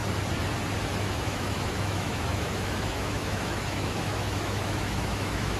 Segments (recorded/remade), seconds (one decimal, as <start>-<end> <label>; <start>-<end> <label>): 0.0-1.0 recorded; 1.0-5.6 remade